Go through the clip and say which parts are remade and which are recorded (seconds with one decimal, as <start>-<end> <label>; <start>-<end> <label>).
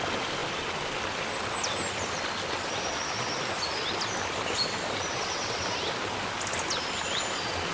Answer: 0.0-7.7 recorded